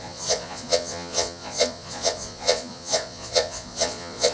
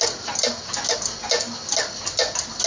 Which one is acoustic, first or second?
second